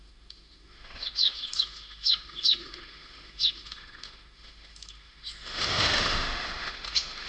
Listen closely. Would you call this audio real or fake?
fake